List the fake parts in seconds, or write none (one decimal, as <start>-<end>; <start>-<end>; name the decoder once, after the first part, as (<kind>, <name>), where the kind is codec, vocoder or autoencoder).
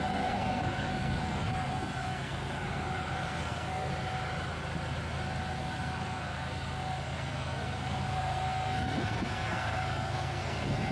0.0-3.9 (codec, SNAC); 5.6-10.9